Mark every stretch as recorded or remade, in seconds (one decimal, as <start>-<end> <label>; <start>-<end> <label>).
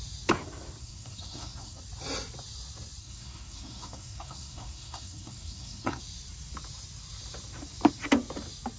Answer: 0.0-0.8 recorded; 0.8-1.8 remade; 1.8-3.0 recorded; 3.0-6.0 remade; 6.0-8.8 recorded